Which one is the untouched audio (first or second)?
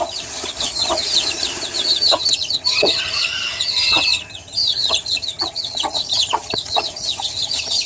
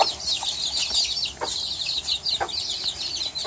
second